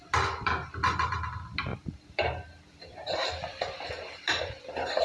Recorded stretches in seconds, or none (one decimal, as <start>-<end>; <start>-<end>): 0.0-1.7